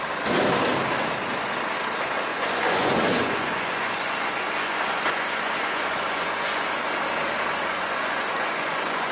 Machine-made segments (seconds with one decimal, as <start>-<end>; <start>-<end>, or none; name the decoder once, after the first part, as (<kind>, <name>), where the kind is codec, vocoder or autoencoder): 2.3-6.8 (vocoder, Vocos); 7.5-9.1